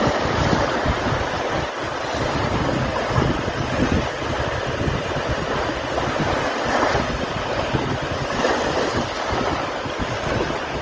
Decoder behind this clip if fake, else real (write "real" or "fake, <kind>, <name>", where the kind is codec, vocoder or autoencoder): real